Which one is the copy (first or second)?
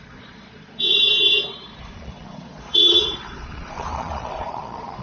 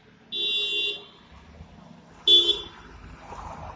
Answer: first